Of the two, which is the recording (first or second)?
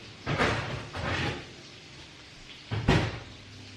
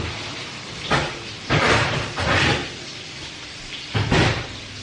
first